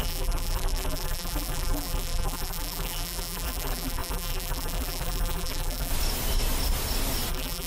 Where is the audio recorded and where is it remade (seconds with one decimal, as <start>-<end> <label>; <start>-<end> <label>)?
0.0-5.9 remade; 5.9-7.3 recorded; 7.3-7.7 remade